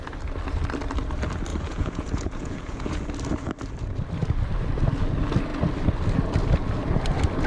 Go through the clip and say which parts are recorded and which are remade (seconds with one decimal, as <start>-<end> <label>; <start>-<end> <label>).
0.0-1.5 recorded; 1.5-3.1 remade; 3.1-7.5 recorded